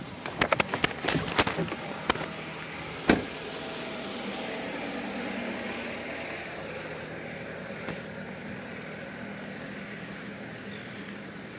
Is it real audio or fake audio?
real